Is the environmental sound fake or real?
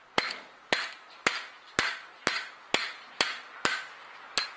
real